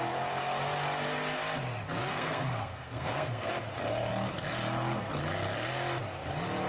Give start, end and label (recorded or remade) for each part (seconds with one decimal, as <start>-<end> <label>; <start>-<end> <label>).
0.0-2.1 recorded; 2.1-3.5 remade; 3.5-6.7 recorded